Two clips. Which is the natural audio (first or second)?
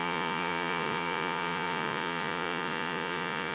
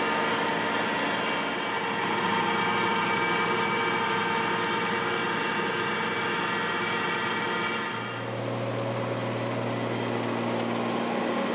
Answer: second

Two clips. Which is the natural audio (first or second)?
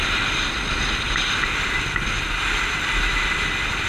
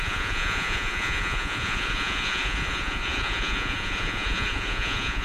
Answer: first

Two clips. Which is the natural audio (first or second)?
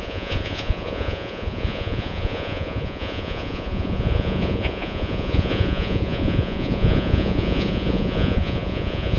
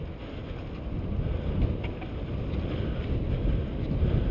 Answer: second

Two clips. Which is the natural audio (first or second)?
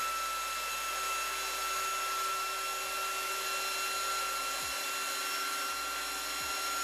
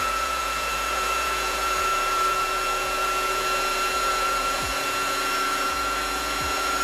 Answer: first